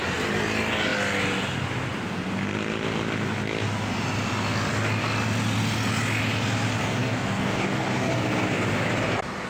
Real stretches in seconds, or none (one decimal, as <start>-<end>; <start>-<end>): 0.0-6.8; 8.1-9.5